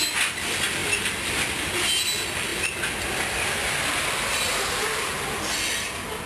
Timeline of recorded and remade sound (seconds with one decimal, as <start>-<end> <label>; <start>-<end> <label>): 0.0-6.3 recorded